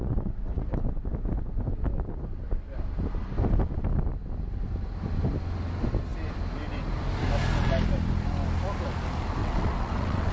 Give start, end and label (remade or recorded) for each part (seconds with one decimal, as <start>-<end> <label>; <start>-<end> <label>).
0.0-0.7 remade; 0.7-9.4 recorded; 9.4-10.3 remade